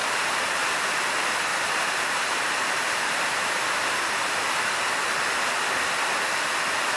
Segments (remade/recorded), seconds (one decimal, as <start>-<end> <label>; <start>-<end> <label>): 0.0-0.7 remade; 0.7-1.5 recorded; 1.5-4.4 remade; 4.4-7.0 recorded